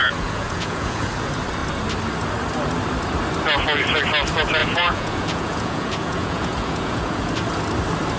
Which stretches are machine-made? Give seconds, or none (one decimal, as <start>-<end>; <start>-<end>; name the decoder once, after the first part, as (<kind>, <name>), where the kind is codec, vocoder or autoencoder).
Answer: 0.0-1.1 (vocoder, Vocos); 4.6-7.3